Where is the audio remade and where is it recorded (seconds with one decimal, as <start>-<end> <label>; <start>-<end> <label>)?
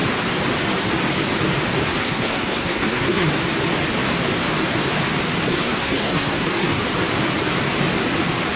0.0-2.0 recorded; 2.0-3.3 remade; 3.3-5.5 recorded; 5.5-6.8 remade; 6.8-8.6 recorded